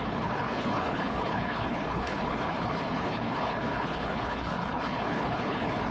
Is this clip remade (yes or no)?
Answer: yes